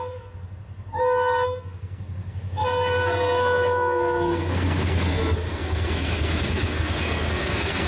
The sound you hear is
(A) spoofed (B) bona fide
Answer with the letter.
A